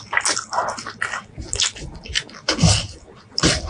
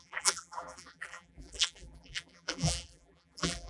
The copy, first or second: second